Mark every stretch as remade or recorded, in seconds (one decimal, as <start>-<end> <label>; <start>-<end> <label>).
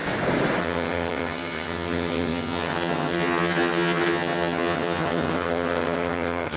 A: 0.0-0.6 recorded; 0.6-6.6 remade